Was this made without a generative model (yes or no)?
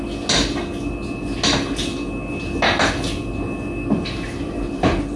yes